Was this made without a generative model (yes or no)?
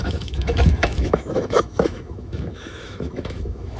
no